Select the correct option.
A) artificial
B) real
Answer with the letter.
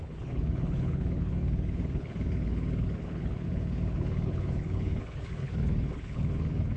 A